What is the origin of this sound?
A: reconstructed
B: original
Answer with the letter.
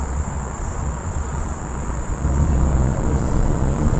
A